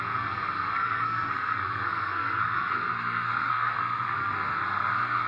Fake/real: fake